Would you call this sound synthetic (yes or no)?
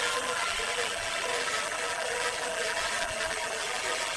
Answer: yes